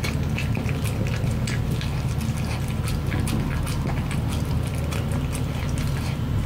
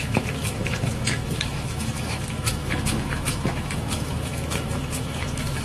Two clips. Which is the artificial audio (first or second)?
second